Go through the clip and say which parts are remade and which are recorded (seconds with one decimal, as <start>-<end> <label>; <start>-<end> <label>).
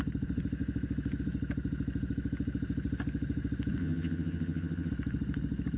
0.0-3.8 recorded; 3.8-4.9 remade; 4.9-5.8 recorded